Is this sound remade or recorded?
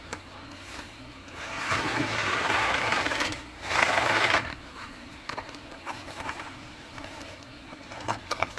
remade